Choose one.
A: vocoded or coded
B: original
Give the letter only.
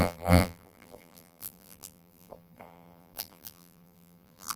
A